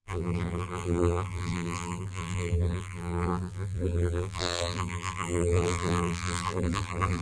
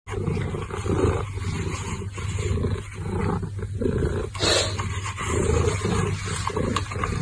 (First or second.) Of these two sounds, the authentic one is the second